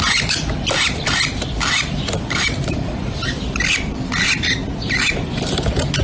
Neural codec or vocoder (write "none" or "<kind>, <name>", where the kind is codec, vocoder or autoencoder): vocoder, BigVGAN v2